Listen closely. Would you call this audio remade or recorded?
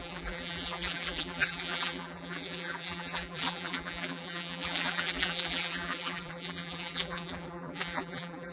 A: remade